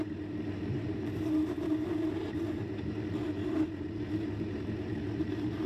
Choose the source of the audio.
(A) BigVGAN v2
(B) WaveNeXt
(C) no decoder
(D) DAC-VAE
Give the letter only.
A